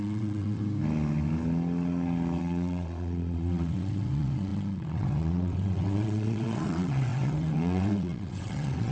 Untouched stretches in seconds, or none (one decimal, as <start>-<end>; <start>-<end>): 0.6-2.4